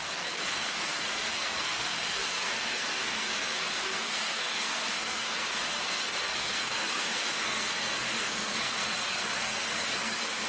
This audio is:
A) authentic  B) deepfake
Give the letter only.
B